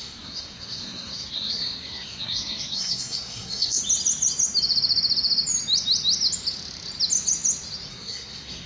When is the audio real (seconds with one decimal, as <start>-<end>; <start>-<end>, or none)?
3.8-7.9